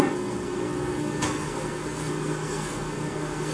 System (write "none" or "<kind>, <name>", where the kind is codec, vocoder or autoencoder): codec, SNAC